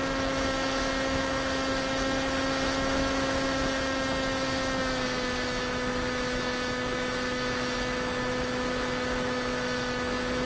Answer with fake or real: fake